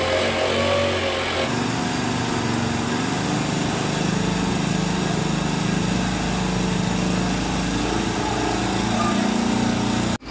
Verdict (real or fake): real